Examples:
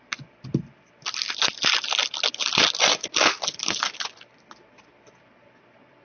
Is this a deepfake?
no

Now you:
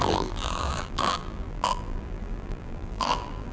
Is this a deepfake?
yes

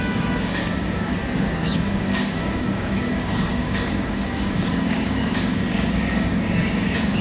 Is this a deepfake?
yes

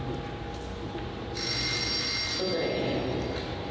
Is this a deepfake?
no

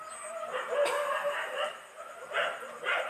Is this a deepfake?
yes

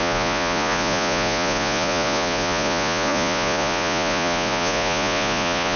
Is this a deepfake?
yes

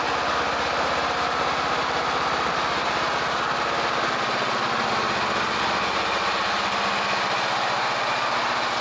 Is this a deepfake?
no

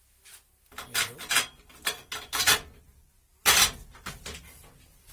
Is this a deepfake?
no